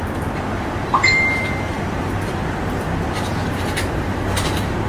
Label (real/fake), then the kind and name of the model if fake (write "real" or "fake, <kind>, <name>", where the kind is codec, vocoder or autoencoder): fake, vocoder, BigVGAN v2